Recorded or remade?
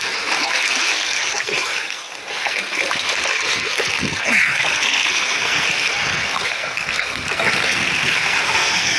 remade